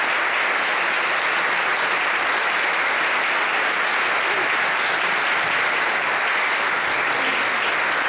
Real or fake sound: real